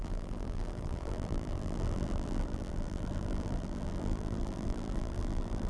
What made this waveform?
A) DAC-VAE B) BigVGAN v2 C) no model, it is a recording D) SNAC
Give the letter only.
B